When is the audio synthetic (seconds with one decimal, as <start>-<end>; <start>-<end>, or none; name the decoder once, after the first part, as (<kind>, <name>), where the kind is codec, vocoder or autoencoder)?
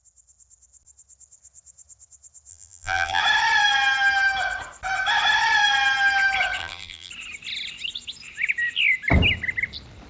2.5-3.2 (vocoder, BigVGAN v2); 6.6-7.1